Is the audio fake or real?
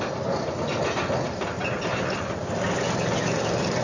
real